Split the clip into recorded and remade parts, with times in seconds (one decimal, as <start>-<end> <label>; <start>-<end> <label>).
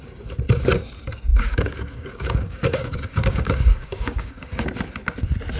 0.0-1.3 recorded; 1.3-4.7 remade; 4.7-5.6 recorded